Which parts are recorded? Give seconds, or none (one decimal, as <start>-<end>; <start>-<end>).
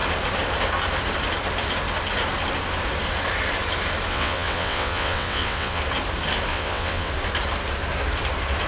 0.0-4.1; 5.8-6.5; 7.1-8.7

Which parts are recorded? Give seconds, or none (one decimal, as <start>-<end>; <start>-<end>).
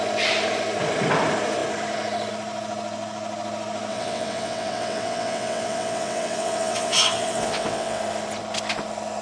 0.0-3.9; 8.0-9.2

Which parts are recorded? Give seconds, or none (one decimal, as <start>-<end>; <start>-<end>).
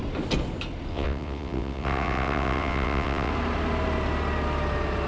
0.0-0.9; 3.3-5.1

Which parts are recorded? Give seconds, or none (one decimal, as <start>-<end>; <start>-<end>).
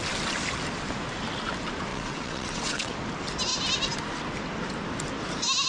0.0-1.9; 2.9-5.7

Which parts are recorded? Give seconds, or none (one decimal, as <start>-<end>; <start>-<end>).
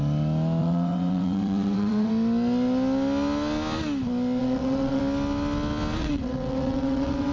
0.0-0.6; 2.1-4.4; 5.0-6.0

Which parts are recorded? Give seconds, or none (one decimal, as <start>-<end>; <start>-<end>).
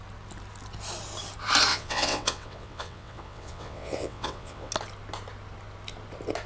0.0-1.7; 4.7-6.5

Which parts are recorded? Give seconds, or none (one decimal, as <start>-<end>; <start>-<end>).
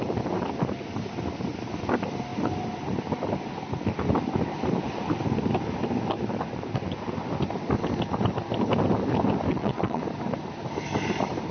0.0-9.5; 10.0-11.5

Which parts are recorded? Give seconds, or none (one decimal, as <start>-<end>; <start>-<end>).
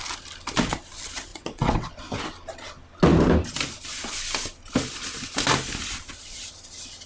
0.0-1.3; 1.9-7.1